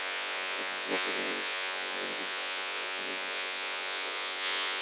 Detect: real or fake fake